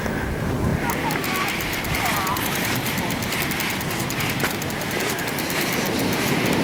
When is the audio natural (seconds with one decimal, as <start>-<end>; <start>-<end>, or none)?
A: 0.0-6.6